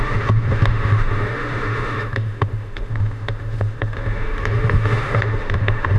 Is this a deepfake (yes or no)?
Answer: yes